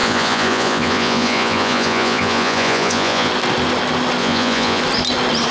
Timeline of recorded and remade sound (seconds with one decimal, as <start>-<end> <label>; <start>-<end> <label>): 0.0-3.3 remade; 3.3-4.2 recorded; 4.2-4.8 remade; 4.8-5.5 recorded